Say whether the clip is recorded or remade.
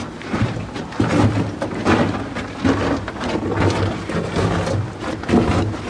recorded